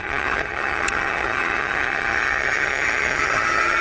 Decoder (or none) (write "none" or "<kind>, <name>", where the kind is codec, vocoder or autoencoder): vocoder, HiFi-GAN